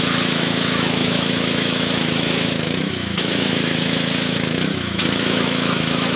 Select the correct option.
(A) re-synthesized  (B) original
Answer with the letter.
A